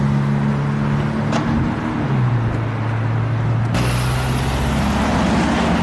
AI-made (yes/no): no